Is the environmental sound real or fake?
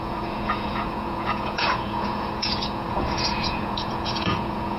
fake